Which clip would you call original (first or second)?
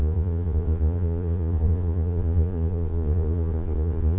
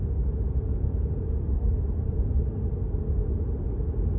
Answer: second